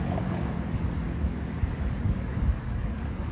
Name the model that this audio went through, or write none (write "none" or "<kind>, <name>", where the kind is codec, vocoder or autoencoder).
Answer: codec, DAC